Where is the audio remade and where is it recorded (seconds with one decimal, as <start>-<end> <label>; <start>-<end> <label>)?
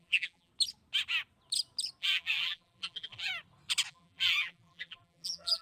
0.0-0.5 remade; 0.5-2.0 recorded; 2.0-3.3 remade; 3.3-3.9 recorded; 3.9-5.6 remade